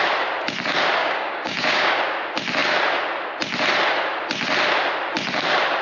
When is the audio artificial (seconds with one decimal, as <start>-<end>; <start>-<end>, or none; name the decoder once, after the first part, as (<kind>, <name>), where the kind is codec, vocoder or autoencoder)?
1.0-1.9 (codec, DAC)